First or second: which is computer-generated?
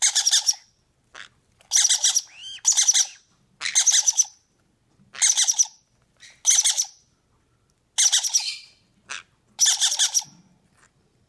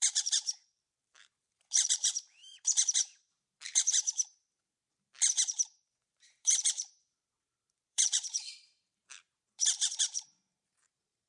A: second